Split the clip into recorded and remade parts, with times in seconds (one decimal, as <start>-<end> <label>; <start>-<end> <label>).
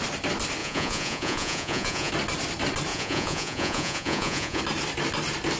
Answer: 0.0-0.6 recorded; 0.6-2.1 remade; 2.1-2.9 recorded; 2.9-4.6 remade; 4.6-5.6 recorded